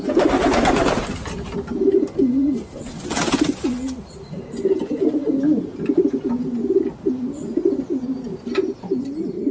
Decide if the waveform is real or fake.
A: real